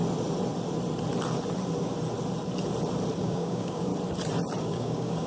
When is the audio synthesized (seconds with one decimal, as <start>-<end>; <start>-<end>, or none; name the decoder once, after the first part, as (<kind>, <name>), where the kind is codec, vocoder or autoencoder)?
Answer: 3.2-3.9 (codec, DAC); 4.6-5.3